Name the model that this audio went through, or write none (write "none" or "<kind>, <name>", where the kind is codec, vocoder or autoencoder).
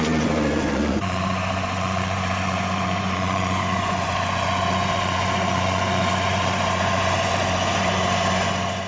vocoder, Vocos